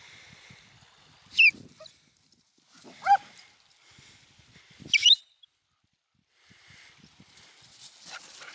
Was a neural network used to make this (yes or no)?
no